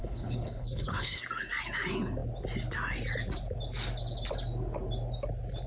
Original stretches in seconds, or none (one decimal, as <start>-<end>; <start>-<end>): 1.2-5.7